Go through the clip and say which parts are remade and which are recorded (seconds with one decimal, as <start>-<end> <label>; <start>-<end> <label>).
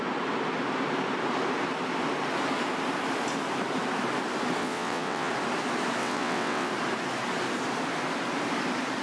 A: 0.0-4.6 recorded; 4.6-5.3 remade; 5.3-6.0 recorded; 6.0-6.7 remade; 6.7-9.0 recorded